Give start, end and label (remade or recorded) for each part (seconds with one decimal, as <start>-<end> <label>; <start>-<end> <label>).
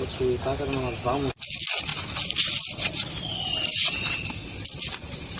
0.0-1.9 recorded; 1.9-4.2 remade; 4.2-5.4 recorded